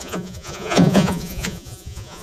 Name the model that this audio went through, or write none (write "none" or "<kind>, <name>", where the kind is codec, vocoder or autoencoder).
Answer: vocoder, Vocos